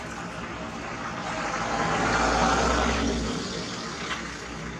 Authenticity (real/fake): real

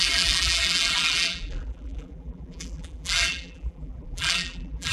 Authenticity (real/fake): fake